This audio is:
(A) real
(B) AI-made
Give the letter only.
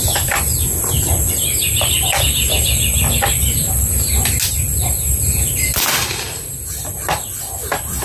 A